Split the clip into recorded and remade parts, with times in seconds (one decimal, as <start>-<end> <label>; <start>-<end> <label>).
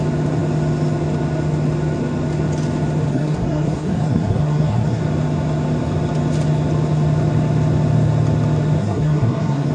0.0-3.1 recorded; 3.1-5.0 remade; 5.0-8.8 recorded; 8.8-9.7 remade